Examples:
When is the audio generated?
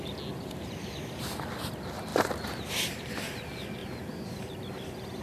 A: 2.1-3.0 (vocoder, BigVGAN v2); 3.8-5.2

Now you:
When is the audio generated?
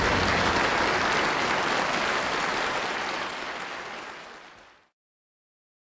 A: none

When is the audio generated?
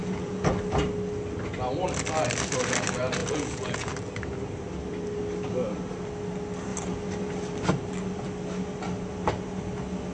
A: 0.0-0.5 (vocoder, Vocos); 3.2-3.9